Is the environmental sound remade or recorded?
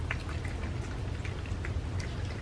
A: recorded